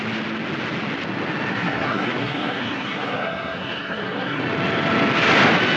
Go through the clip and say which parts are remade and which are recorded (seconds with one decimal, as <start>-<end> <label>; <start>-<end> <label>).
0.0-1.5 recorded; 1.5-4.4 remade; 4.4-5.8 recorded